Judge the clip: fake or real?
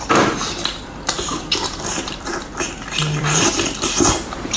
fake